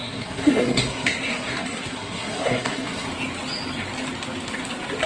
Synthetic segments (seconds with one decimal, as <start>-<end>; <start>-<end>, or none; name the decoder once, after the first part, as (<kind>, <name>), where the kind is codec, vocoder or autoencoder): 0.0-3.1 (codec, SNAC)